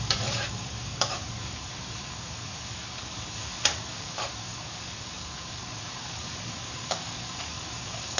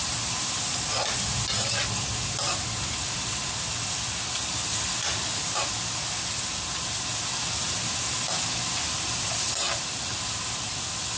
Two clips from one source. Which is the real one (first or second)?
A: second